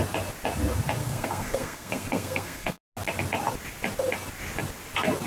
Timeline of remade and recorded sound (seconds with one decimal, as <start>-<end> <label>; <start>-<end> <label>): 0.0-1.0 recorded; 1.0-2.8 remade; 2.8-5.3 recorded